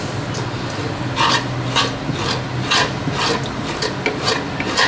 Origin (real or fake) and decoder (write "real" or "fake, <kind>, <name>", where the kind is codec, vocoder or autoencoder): real